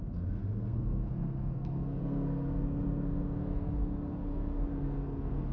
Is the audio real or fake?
fake